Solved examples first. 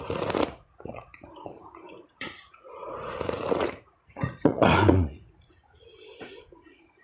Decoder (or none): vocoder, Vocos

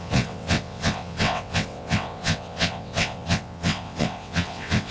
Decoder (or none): vocoder, WaveNeXt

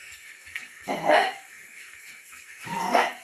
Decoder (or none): codec, SNAC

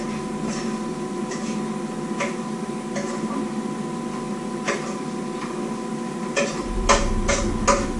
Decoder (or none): none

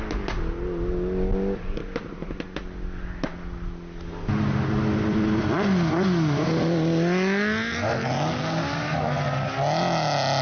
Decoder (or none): none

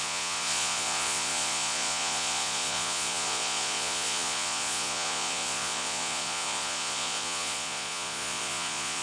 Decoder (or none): vocoder, Vocos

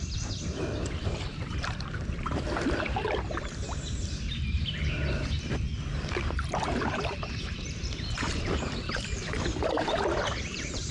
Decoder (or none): vocoder, BigVGAN v2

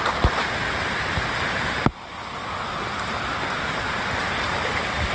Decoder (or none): none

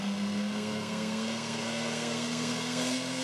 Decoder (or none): codec, SNAC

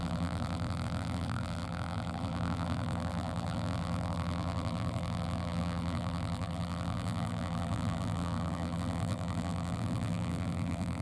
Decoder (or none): vocoder, BigVGAN v2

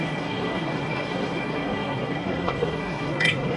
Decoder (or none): codec, SNAC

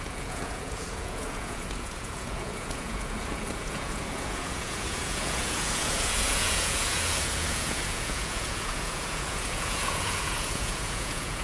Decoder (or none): vocoder, Vocos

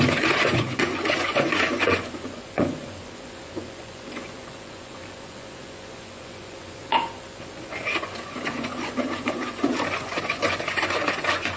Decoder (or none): vocoder, Vocos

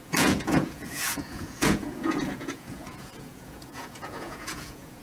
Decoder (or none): vocoder, Vocos